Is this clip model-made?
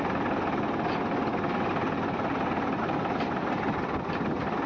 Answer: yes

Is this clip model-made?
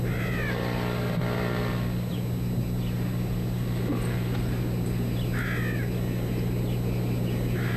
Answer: no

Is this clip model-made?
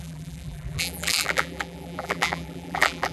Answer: yes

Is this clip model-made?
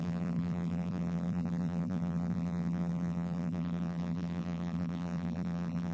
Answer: yes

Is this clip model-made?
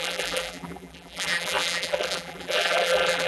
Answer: yes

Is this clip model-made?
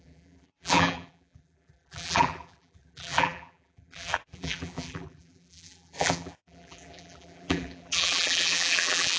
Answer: yes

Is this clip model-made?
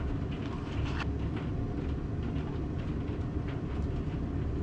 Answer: no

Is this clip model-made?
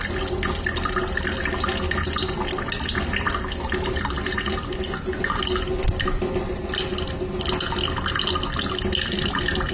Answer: no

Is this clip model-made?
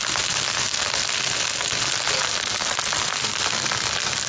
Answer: no